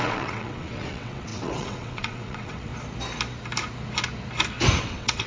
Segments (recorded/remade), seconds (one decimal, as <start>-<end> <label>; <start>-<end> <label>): 0.0-2.7 remade; 2.7-4.8 recorded; 4.8-5.3 remade